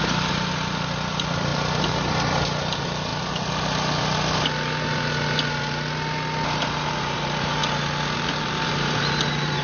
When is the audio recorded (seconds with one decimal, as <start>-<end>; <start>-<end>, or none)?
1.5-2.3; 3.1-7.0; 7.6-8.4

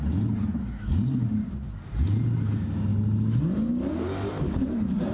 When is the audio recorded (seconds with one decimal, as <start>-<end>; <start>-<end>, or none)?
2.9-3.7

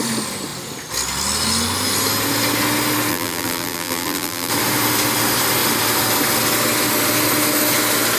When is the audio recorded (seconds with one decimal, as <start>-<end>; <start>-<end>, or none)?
0.0-3.1; 4.5-8.2